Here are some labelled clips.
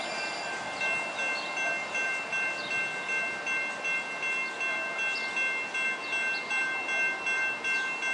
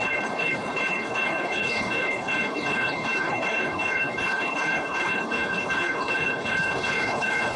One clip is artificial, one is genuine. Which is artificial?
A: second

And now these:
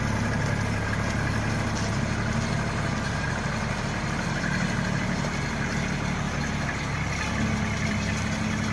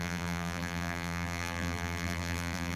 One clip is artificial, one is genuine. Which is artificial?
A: second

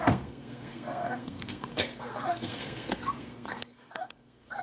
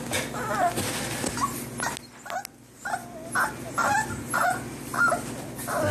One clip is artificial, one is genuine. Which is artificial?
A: first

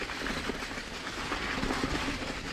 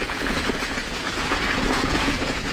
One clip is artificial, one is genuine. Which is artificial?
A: second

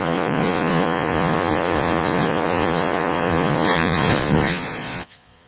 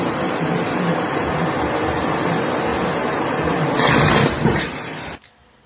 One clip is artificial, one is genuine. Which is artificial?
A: first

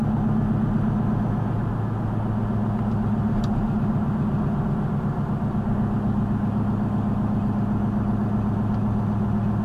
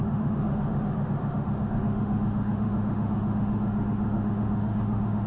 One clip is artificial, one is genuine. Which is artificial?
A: second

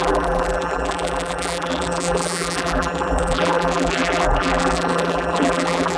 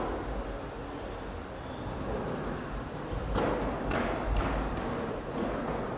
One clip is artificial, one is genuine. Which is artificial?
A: first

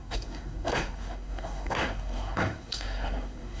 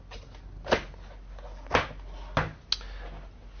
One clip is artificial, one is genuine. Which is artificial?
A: first